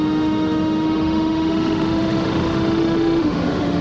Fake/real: fake